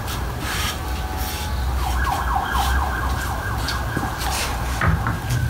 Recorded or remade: recorded